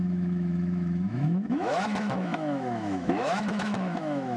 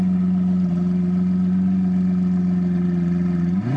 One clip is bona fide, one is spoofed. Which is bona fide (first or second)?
second